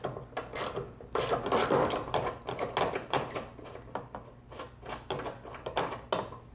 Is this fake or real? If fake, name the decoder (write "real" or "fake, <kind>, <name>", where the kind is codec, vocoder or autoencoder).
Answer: real